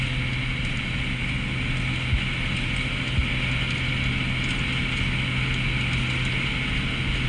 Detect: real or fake real